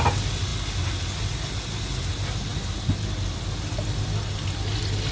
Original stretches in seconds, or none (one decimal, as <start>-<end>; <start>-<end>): 0.0-5.1